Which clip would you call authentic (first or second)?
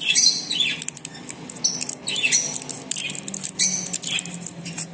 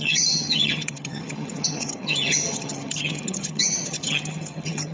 first